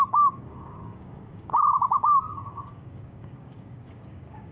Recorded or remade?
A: remade